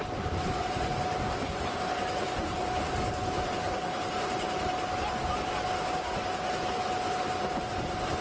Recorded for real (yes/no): yes